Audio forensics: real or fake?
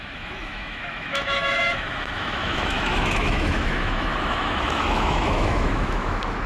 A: fake